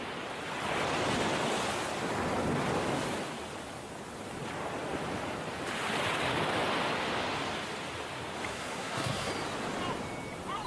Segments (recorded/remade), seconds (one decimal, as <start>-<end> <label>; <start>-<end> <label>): 0.0-8.5 recorded; 8.5-9.3 remade; 9.3-10.7 recorded